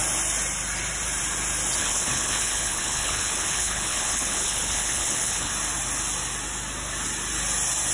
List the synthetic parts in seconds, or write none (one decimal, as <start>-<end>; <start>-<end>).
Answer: 1.8-5.5